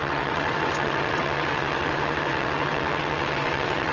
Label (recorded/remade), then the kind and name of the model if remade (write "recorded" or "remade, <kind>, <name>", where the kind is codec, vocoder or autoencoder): remade, vocoder, WaveNeXt